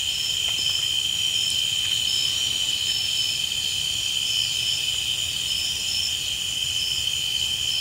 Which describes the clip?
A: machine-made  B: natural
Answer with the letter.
B